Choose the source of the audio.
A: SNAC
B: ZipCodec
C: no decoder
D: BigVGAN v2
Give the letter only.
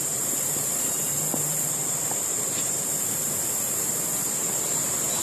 D